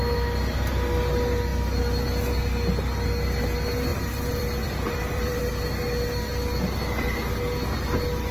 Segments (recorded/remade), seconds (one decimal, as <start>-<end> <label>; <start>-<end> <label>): 0.0-3.9 recorded; 3.9-5.5 remade; 5.5-8.3 recorded